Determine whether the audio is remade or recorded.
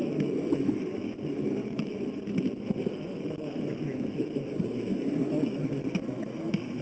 remade